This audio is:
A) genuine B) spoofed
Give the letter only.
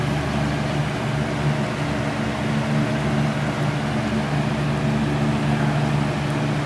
A